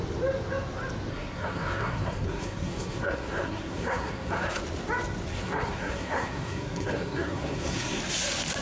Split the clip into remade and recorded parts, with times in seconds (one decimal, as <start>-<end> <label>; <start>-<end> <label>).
0.0-1.1 recorded; 1.1-4.6 remade; 4.6-5.3 recorded; 5.3-8.0 remade; 8.0-8.6 recorded